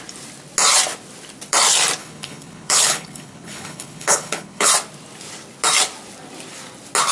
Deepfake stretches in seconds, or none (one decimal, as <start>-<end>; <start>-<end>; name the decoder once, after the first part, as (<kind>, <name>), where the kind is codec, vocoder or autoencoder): 2.0-4.7 (codec, HILCodec)